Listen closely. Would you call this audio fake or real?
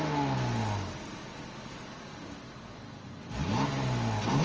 real